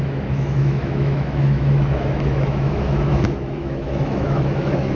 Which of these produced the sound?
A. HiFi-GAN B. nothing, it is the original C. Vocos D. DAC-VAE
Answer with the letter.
D